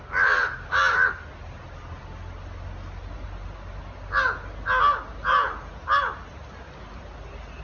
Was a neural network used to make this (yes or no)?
no